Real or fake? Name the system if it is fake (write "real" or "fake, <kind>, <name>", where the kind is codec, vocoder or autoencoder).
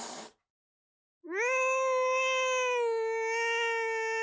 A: real